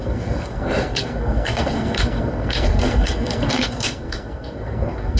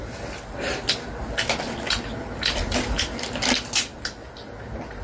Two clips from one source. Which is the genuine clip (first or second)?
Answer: second